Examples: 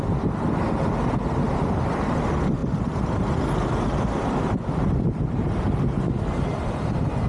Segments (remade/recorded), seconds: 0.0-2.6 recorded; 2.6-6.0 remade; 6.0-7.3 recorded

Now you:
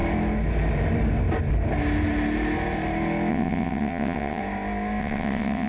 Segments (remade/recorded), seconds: 0.0-3.3 recorded; 3.3-4.4 remade; 4.4-5.0 recorded; 5.0-5.7 remade

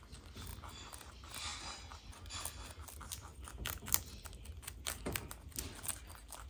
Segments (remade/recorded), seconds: 0.0-6.5 recorded

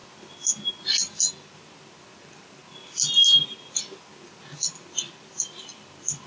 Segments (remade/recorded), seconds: 0.0-6.3 recorded

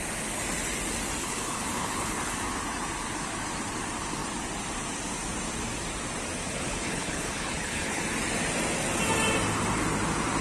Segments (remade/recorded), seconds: 0.0-1.2 recorded; 1.2-2.4 remade; 2.4-6.5 recorded; 6.5-8.0 remade; 8.0-10.4 recorded

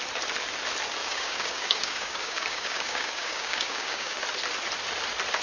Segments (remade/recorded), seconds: 0.0-1.0 recorded; 1.0-4.2 remade; 4.2-5.4 recorded

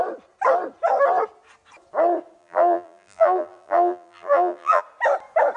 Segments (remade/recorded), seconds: 0.0-2.4 recorded; 2.4-4.8 remade; 4.8-5.6 recorded